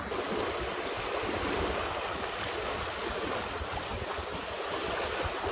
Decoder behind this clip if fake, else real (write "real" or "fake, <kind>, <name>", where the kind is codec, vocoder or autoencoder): real